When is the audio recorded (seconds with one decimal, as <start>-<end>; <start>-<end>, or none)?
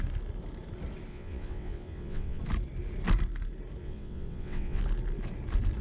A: 0.0-1.1; 2.4-3.8; 4.8-5.8